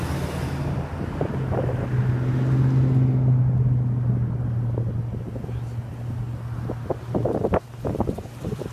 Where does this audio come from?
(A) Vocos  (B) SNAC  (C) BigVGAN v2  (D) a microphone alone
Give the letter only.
D